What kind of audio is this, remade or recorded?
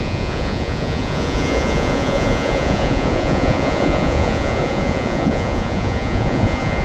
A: remade